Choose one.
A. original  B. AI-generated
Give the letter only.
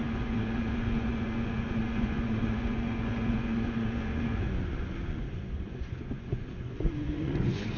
B